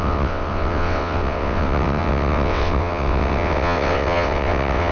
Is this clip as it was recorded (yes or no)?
no